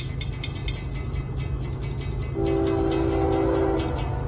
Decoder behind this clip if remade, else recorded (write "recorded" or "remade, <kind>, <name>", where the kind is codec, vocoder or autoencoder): recorded